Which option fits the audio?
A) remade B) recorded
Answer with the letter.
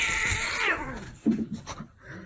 A